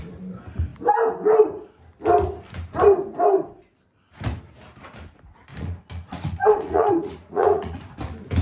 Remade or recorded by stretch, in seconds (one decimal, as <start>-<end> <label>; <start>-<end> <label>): 0.0-5.5 recorded; 5.5-8.0 remade; 8.0-8.4 recorded